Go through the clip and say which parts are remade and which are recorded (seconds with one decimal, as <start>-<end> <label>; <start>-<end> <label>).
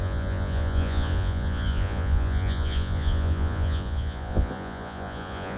0.0-5.6 remade